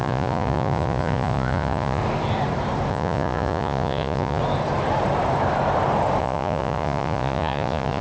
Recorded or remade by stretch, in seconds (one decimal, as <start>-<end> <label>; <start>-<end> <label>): 0.0-2.0 remade; 2.0-2.9 recorded; 2.9-4.4 remade; 4.4-6.2 recorded; 6.2-8.0 remade